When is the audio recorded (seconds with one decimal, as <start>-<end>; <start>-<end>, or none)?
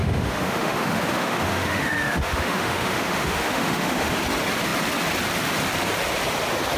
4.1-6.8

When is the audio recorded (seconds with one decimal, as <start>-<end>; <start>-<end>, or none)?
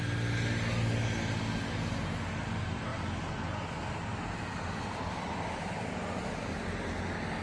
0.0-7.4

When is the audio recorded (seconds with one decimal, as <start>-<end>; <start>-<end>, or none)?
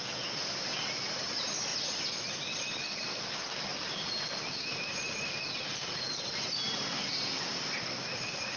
0.0-8.6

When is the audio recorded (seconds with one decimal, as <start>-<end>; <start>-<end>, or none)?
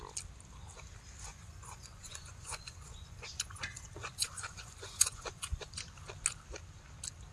0.0-1.3; 5.7-7.3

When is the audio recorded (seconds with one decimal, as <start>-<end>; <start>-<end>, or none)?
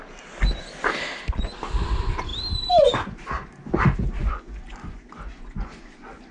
0.0-4.2